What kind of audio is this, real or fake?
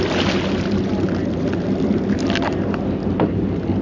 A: real